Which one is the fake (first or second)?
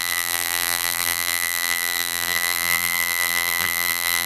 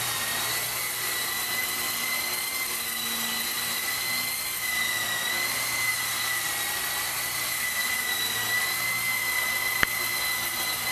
first